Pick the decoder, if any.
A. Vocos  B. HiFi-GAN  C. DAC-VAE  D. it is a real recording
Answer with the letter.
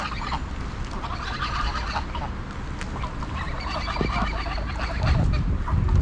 D